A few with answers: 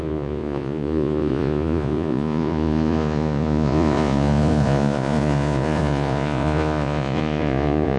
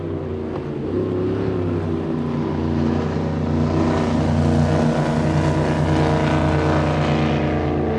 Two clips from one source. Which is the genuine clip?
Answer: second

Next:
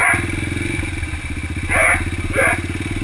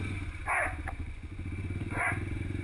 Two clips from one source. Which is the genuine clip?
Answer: first